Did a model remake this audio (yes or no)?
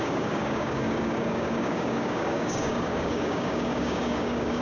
yes